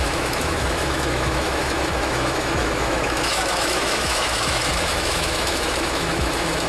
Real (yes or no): no